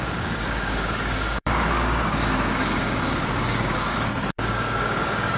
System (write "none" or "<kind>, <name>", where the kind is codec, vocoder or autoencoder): codec, DAC